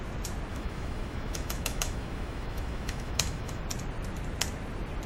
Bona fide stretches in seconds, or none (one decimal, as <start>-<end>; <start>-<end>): 0.0-0.5; 3.6-5.1